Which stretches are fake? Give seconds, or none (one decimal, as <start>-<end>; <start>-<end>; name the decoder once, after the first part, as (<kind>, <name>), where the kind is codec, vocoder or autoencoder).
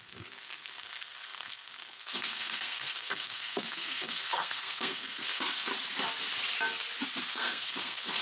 0.0-5.7 (codec, SNAC); 7.2-8.2